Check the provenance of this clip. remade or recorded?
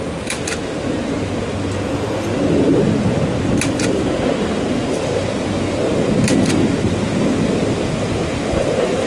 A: recorded